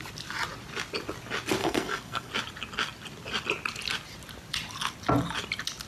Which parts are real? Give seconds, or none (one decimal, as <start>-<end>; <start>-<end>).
0.0-1.6; 2.3-5.9